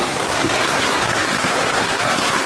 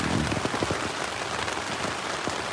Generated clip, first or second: first